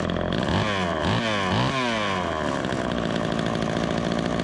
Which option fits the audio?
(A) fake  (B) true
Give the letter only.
B